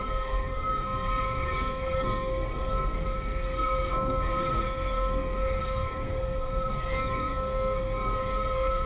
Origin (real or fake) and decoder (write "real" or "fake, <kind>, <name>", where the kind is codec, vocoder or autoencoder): fake, codec, SNAC